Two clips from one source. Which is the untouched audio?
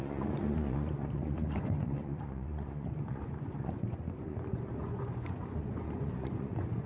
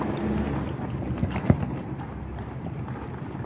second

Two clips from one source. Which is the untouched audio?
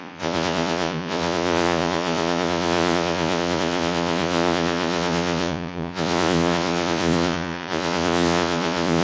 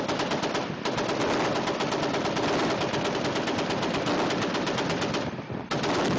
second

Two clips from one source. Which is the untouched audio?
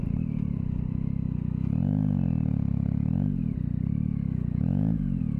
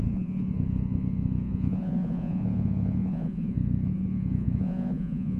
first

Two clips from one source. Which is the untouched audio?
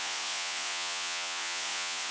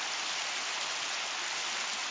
second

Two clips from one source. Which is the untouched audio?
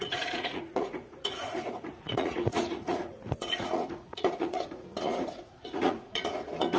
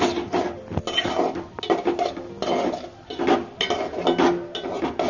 second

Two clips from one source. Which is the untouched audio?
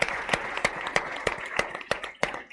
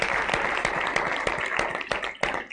second